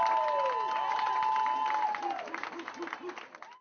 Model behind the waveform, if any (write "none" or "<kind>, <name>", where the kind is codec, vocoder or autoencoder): none